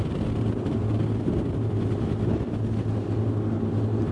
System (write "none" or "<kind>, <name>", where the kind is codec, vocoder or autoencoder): none